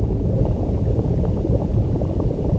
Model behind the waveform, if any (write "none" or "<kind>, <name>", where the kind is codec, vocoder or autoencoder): vocoder, Vocos